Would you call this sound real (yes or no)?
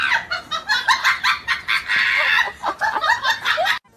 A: yes